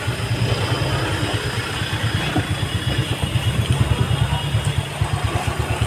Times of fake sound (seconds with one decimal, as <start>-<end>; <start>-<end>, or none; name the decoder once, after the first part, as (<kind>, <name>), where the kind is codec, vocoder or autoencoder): none